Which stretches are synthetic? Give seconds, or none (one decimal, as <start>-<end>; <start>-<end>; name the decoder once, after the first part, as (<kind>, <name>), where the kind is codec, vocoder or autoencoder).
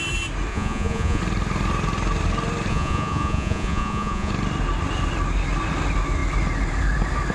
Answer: 0.5-1.2 (vocoder, Vocos); 2.7-4.3